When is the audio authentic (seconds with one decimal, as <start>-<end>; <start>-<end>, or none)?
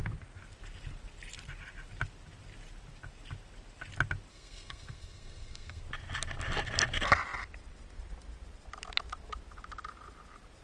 0.0-4.3; 5.8-10.6